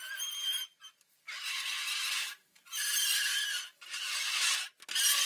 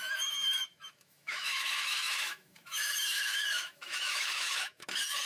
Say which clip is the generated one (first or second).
second